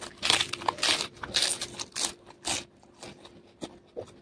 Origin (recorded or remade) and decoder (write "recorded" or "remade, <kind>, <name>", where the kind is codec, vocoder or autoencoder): recorded